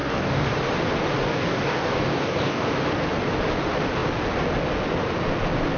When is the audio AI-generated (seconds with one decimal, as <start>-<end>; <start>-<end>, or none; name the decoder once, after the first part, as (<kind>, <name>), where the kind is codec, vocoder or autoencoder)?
0.0-0.5 (codec, DAC); 1.3-2.7